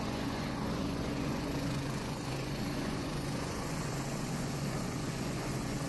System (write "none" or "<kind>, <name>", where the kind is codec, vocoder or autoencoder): vocoder, Vocos